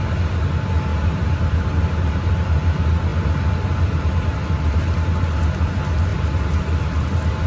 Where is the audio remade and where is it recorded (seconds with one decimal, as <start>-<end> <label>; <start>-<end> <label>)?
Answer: 0.0-0.9 recorded; 0.9-2.3 remade; 2.3-6.1 recorded; 6.1-6.8 remade; 6.8-7.5 recorded